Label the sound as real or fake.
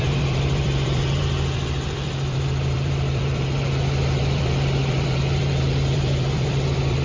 fake